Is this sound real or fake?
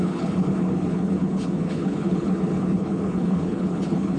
fake